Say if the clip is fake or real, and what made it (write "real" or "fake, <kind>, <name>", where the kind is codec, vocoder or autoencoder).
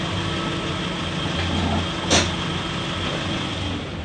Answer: real